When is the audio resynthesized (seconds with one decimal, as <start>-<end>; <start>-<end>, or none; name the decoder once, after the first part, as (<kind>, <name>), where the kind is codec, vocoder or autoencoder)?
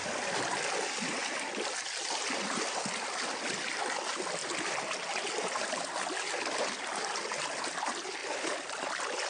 none